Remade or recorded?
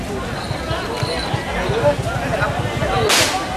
recorded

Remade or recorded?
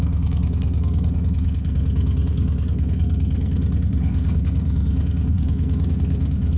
remade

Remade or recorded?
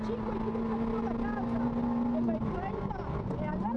recorded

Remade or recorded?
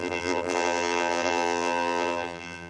remade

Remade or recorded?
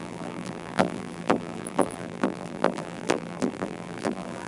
remade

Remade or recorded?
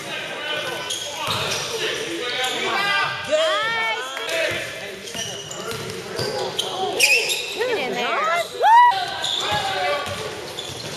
recorded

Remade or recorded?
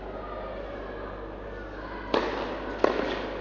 recorded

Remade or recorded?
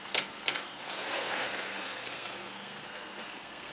remade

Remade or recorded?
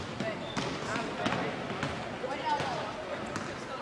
recorded